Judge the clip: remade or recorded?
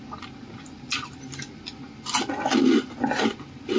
recorded